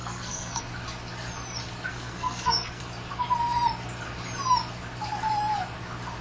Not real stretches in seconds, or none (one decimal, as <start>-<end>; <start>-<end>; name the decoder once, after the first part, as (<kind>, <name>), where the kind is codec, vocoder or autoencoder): 0.0-0.6 (codec, SNAC); 1.9-2.8